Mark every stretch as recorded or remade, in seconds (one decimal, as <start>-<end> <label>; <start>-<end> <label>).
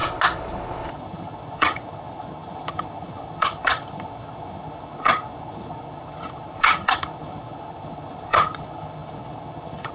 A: 0.0-0.9 recorded; 0.9-9.9 remade